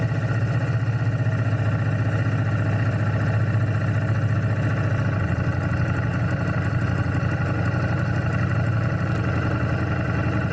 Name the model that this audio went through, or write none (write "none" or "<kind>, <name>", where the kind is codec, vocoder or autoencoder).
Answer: none